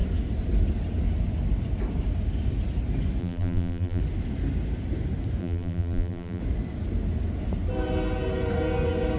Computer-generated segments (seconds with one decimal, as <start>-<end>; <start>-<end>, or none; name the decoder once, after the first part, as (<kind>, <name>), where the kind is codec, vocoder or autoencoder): 3.2-4.0 (vocoder, BigVGAN v2); 5.4-6.4